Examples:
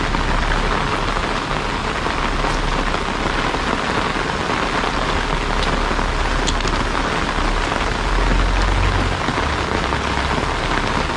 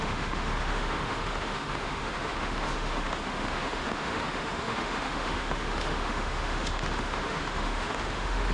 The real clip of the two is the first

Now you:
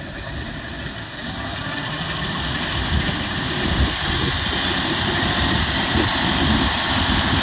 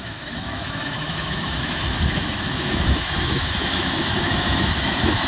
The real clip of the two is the first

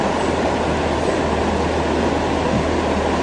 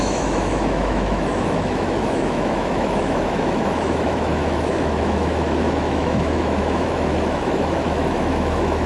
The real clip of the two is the first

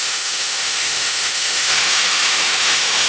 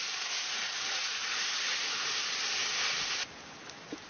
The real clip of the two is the second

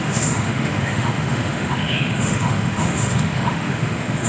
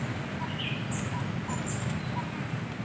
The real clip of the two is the second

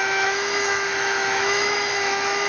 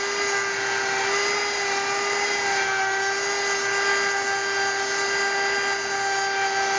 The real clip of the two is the second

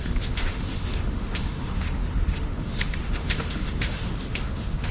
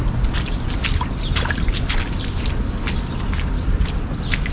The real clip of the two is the second